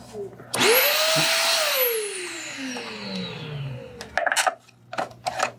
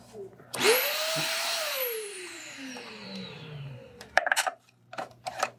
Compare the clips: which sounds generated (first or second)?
second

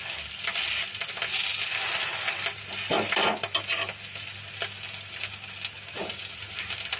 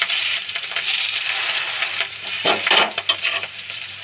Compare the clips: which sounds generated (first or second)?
second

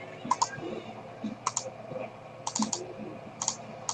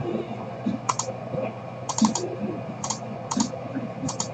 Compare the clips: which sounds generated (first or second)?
second